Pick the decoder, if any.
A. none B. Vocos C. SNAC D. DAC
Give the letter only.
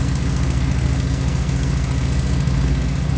C